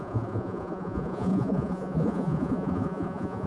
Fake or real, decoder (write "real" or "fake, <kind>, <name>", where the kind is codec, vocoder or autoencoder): fake, vocoder, Vocos